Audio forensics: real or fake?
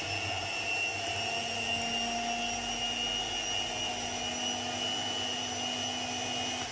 real